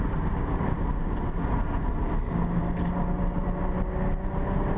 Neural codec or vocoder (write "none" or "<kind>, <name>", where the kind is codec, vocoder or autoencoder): none